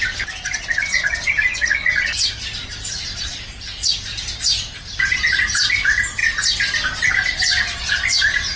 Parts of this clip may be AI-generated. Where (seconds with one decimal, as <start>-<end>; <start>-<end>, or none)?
0.0-6.2; 7.1-8.6